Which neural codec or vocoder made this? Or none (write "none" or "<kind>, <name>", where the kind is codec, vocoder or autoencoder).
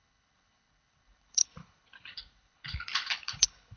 codec, HILCodec